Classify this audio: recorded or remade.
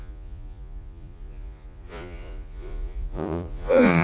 remade